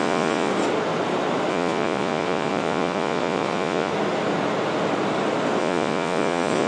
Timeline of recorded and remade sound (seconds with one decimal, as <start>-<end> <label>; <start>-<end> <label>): 0.0-0.5 remade; 0.5-1.5 recorded; 1.5-3.9 remade; 3.9-5.6 recorded; 5.6-6.7 remade